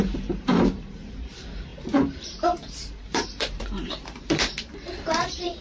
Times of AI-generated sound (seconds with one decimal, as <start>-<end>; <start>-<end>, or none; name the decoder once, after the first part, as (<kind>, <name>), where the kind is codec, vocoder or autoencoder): 0.0-5.6 (vocoder, BigVGAN v2)